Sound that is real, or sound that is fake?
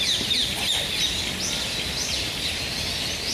real